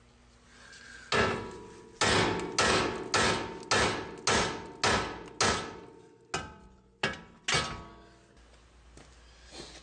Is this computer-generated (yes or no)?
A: no